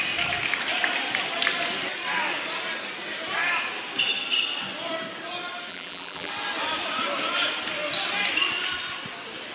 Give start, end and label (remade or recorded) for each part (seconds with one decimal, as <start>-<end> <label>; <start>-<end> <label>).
0.0-5.7 recorded; 5.7-6.3 remade; 6.3-9.5 recorded